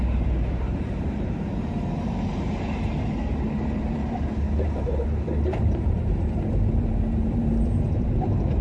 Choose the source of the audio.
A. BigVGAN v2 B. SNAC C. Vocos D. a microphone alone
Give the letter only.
A